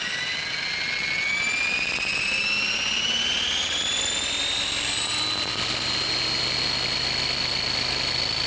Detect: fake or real real